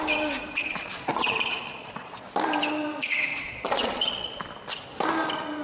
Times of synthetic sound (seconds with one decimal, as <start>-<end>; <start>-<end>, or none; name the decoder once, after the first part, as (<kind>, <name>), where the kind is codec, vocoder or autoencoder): 0.6-2.3 (vocoder, Vocos); 3.3-4.4